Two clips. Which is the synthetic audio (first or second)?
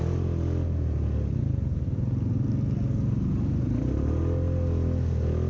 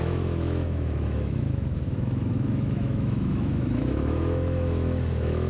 second